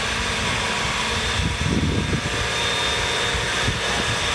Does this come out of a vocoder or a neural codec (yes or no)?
no